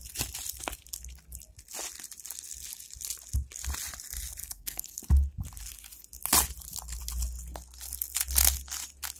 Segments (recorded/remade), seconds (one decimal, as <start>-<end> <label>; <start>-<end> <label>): 0.0-4.4 recorded; 4.4-5.0 remade; 5.0-9.2 recorded